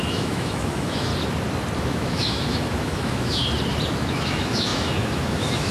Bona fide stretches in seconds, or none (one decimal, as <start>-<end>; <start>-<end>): 1.1-1.8; 3.4-4.0